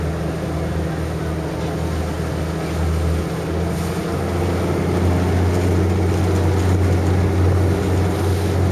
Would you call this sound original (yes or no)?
yes